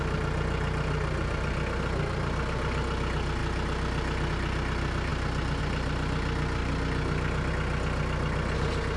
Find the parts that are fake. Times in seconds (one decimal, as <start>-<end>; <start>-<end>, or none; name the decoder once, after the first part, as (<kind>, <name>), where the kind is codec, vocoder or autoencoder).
none